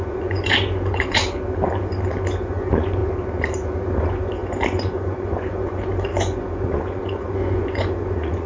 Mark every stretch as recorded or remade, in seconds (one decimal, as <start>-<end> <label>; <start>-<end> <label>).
0.0-1.2 remade; 1.2-2.3 recorded; 2.3-3.0 remade; 3.0-3.9 recorded; 3.9-8.5 remade